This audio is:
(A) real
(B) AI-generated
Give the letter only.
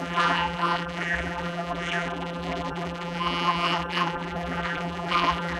B